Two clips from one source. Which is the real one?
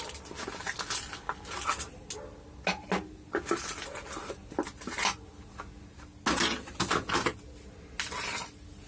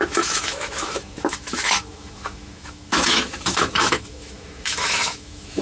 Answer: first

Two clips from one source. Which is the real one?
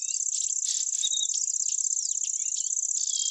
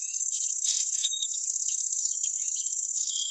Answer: first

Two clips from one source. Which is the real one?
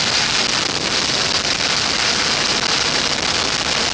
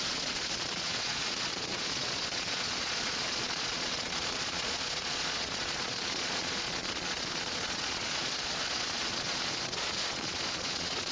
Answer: first